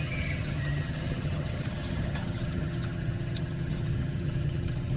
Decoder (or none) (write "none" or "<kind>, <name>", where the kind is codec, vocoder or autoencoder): vocoder, HiFi-GAN